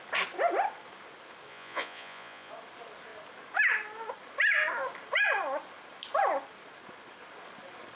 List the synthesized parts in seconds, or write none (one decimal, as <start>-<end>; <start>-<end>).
1.5-2.5